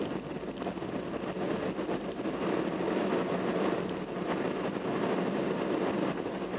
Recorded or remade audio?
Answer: recorded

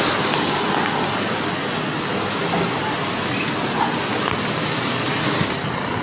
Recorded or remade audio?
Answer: recorded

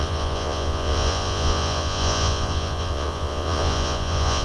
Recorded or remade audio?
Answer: remade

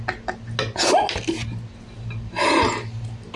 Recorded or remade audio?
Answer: recorded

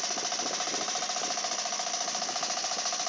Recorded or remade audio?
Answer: recorded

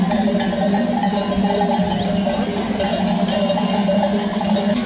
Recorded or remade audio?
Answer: recorded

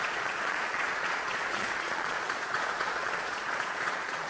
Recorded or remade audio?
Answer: remade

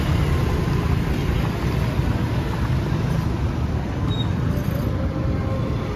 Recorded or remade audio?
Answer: recorded